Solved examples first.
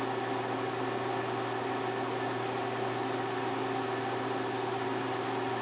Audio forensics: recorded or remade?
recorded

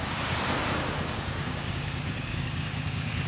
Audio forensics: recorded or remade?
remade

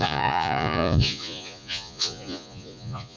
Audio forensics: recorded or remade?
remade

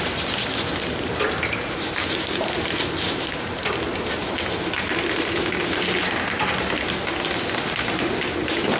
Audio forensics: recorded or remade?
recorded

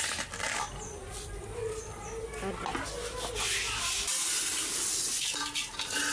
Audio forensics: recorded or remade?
recorded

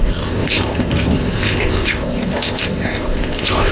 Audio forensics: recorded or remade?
remade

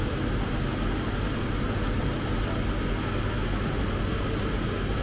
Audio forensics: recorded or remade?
recorded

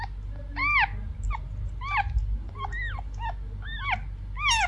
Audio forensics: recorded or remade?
recorded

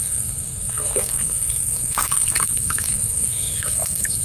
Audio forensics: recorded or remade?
remade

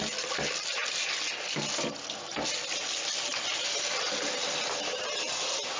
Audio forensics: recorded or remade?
recorded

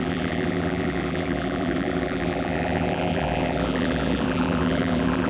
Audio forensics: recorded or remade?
remade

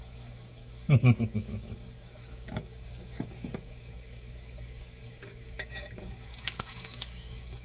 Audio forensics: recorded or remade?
remade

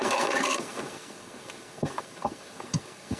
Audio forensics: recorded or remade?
remade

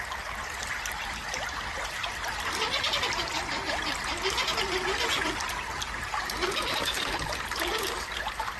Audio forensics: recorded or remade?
recorded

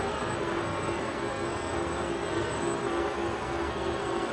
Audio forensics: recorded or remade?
remade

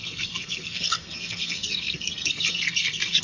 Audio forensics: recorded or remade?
remade